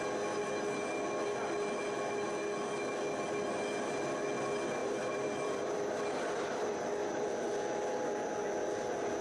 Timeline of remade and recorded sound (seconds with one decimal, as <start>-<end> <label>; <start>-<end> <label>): 0.0-4.8 recorded; 4.8-7.3 remade; 7.3-9.2 recorded